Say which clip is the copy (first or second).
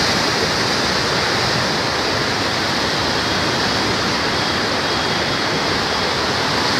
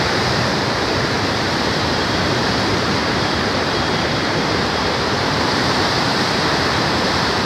second